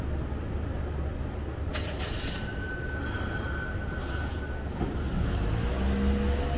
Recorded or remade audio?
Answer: recorded